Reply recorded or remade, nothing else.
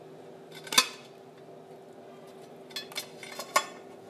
recorded